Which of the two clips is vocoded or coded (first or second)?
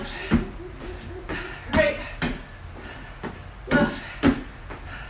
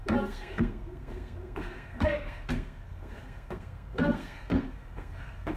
second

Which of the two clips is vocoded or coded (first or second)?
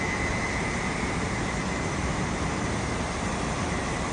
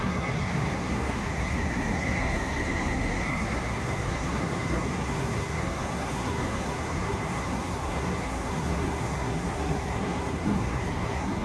second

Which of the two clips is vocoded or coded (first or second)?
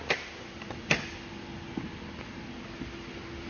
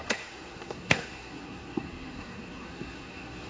second